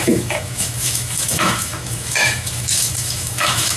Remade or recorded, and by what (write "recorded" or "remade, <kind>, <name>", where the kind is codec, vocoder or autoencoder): remade, autoencoder, DAC-VAE